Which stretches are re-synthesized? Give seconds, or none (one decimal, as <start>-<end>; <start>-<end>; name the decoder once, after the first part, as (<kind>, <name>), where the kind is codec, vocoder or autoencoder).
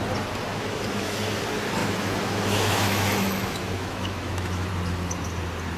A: 0.5-1.2 (autoencoder, DAC-VAE); 1.8-4.7